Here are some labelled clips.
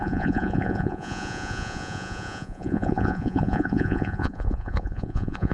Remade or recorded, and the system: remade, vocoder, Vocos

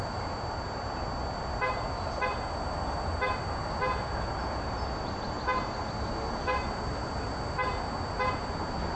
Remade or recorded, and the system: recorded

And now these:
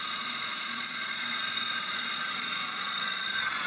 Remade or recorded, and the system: remade, vocoder, Vocos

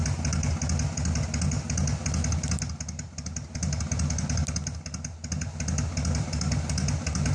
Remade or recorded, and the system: recorded